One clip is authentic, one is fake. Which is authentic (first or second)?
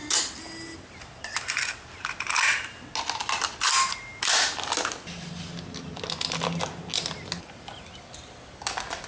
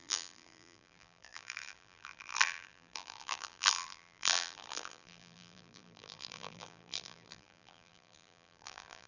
first